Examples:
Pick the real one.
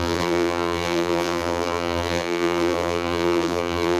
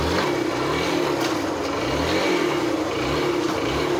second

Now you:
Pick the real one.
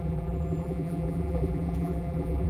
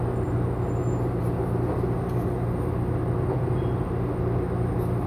second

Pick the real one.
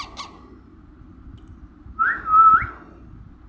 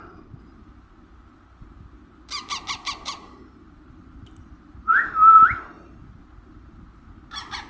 first